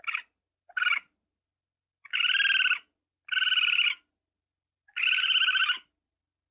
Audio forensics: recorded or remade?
recorded